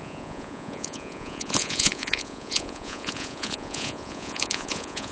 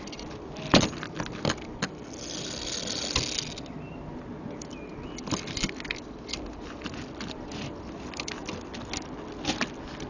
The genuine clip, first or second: second